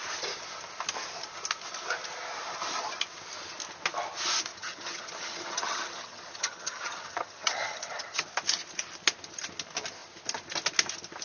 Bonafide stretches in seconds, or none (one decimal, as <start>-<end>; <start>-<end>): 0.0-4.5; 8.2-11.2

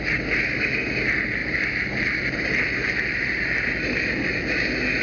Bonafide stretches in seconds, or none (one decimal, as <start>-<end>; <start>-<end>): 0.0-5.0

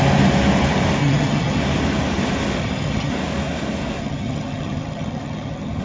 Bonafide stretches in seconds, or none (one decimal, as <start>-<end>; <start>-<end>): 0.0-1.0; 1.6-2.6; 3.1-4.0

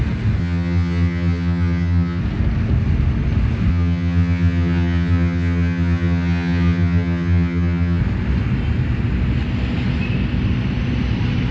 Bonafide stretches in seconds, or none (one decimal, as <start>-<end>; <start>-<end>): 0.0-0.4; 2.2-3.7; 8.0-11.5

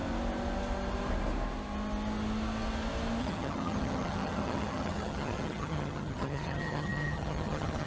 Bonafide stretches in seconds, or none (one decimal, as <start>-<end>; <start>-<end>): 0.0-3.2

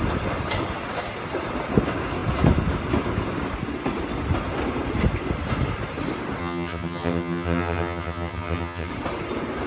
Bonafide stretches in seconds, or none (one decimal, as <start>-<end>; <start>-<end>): 0.0-6.4; 8.9-9.7